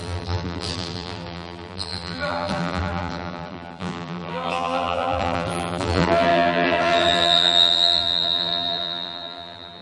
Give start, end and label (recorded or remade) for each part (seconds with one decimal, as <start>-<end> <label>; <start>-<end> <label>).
0.0-9.8 remade